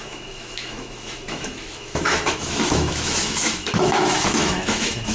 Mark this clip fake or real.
fake